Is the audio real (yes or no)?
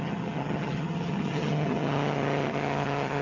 no